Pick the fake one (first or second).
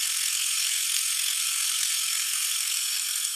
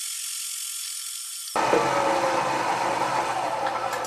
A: first